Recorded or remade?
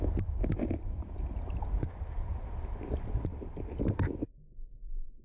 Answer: recorded